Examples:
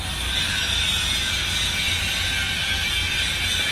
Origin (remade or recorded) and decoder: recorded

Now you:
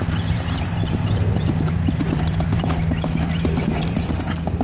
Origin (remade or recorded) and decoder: remade, vocoder, BigVGAN v2